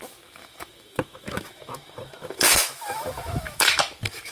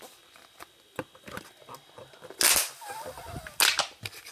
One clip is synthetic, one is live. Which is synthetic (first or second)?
first